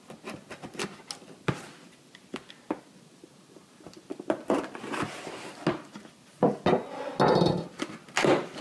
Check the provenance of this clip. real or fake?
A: real